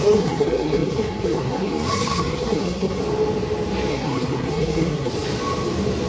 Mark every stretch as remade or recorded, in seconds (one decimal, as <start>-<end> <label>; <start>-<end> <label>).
0.0-3.0 remade; 3.0-3.9 recorded; 3.9-5.1 remade; 5.1-6.1 recorded